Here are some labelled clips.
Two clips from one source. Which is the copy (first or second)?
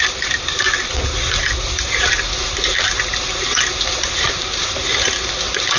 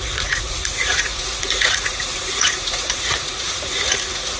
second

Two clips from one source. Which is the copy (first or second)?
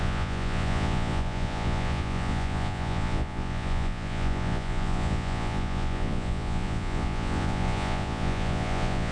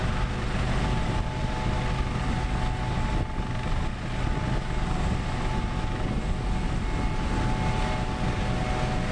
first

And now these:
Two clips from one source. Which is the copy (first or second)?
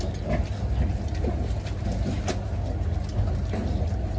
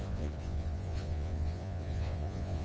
second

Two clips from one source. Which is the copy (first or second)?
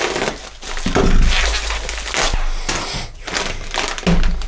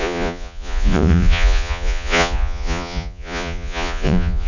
second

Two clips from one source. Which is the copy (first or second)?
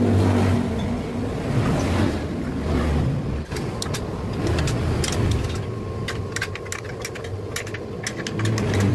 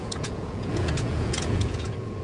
second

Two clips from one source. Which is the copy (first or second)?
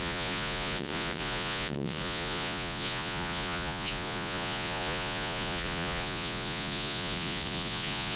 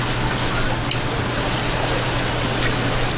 first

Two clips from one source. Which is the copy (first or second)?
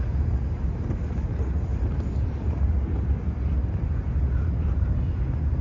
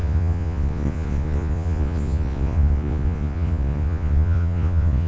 second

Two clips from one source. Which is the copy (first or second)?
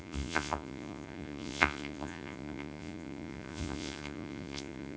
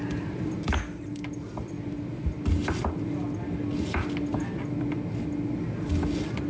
first